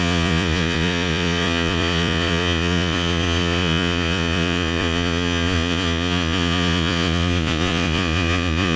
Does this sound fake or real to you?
fake